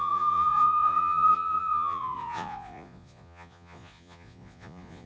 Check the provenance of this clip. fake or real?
fake